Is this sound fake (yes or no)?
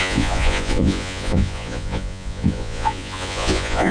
yes